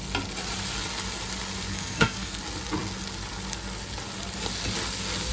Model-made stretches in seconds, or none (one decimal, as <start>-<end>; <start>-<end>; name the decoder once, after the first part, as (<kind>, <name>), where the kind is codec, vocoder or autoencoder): 1.7-2.4 (codec, SNAC)